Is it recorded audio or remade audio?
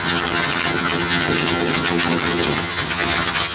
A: remade